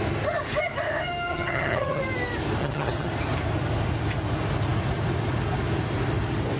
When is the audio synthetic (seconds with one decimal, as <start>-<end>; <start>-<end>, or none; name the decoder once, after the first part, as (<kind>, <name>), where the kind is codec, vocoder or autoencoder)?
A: 1.3-2.0 (vocoder, HiFi-GAN); 2.6-3.1